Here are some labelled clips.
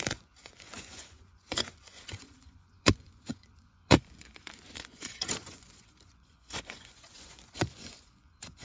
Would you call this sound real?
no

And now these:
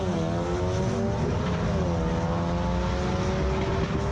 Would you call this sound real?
yes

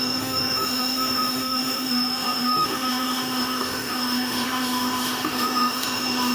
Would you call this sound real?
no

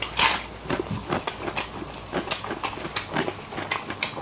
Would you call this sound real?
yes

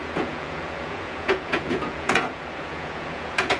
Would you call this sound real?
no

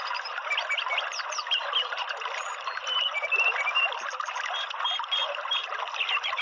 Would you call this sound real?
yes